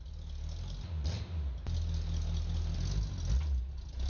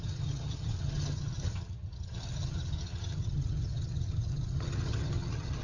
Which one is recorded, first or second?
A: first